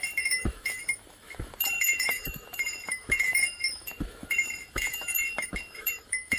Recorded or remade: remade